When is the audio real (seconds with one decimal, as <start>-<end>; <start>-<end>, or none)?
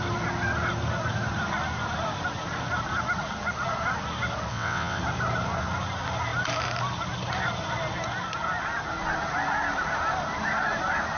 0.0-4.5; 5.0-11.2